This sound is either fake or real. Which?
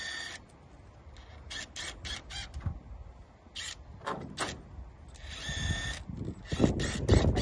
real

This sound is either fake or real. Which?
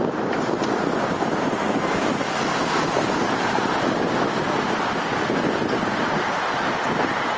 real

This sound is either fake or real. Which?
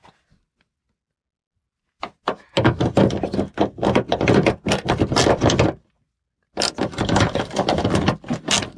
real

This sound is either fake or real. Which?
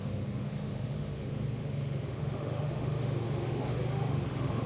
fake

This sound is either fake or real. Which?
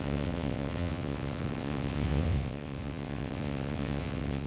fake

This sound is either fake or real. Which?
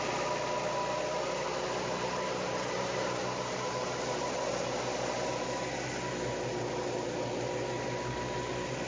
real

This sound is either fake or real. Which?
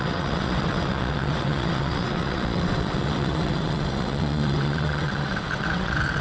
fake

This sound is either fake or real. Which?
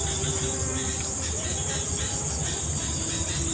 real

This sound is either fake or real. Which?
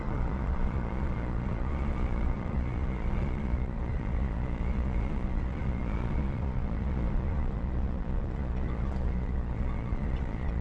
fake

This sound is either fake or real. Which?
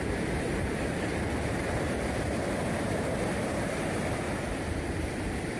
fake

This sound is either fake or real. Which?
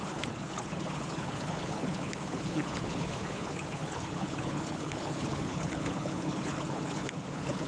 fake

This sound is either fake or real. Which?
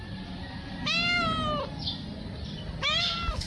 real